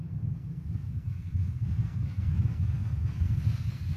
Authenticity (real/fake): fake